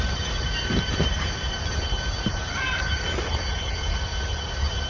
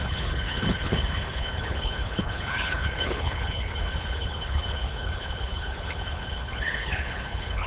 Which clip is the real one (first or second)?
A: first